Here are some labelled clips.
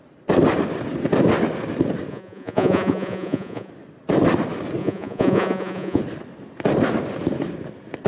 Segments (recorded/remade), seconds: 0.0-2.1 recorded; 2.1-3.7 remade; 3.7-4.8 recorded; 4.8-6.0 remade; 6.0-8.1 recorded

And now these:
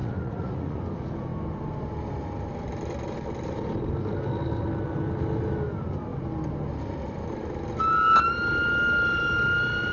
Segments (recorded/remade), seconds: 0.0-0.8 remade; 0.8-9.9 recorded

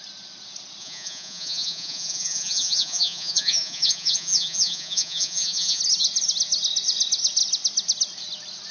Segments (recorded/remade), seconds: 0.0-0.8 recorded; 0.8-5.8 remade; 5.8-8.7 recorded